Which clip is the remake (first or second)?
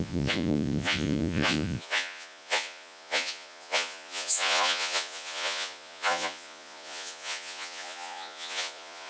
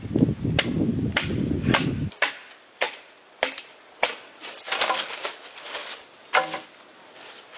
first